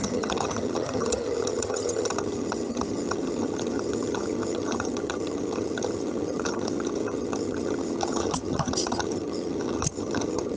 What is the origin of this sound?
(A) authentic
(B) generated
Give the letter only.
B